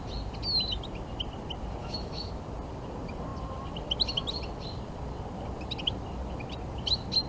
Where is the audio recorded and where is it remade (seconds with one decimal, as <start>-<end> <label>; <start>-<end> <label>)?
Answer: 0.0-1.8 recorded; 1.8-2.3 remade; 2.3-7.3 recorded